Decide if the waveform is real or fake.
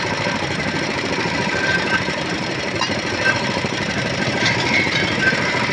fake